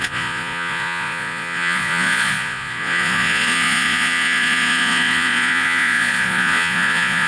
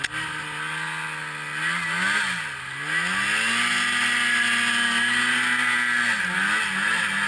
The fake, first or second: first